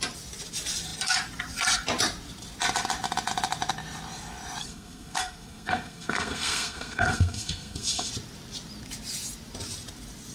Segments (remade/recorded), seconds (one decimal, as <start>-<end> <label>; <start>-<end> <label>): 0.0-4.6 recorded; 4.6-8.1 remade; 8.1-10.3 recorded

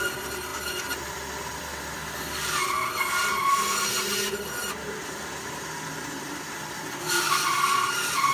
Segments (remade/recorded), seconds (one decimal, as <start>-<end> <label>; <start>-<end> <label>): 0.0-8.3 recorded

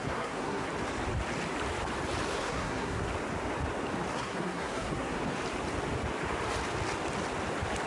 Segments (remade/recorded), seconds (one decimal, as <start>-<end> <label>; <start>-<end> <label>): 0.0-0.7 remade; 0.7-2.3 recorded; 2.3-3.1 remade; 3.1-4.1 recorded; 4.1-5.2 remade; 5.2-7.9 recorded

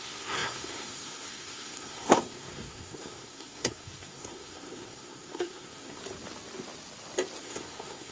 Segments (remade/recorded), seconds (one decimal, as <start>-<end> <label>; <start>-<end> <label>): 0.0-6.0 remade; 6.0-7.4 recorded; 7.4-8.1 remade